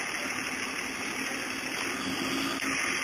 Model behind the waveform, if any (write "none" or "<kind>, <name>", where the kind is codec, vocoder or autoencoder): none